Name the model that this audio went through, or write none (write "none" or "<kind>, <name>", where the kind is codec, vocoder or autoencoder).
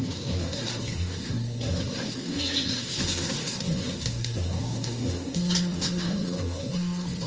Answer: codec, SNAC